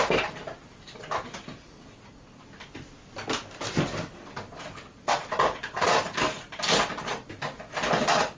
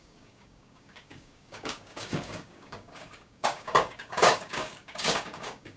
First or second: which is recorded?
first